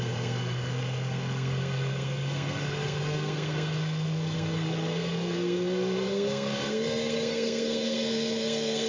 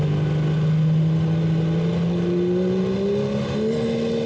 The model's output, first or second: first